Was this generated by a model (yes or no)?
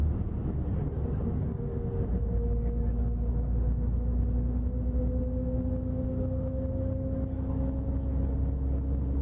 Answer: no